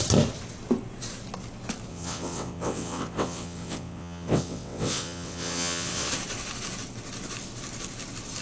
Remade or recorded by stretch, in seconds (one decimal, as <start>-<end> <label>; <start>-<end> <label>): 0.0-1.9 recorded; 1.9-6.1 remade; 6.1-8.4 recorded